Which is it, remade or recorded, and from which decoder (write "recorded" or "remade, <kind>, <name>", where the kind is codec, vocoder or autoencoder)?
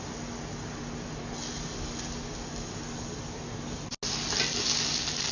recorded